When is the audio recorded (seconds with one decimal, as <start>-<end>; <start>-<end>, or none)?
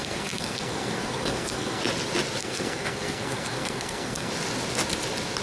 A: 1.8-2.4; 4.3-5.4